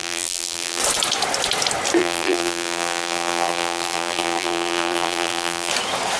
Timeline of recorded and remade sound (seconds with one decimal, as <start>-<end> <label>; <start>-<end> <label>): 0.0-0.8 remade; 0.8-2.0 recorded; 2.0-5.7 remade; 5.7-6.2 recorded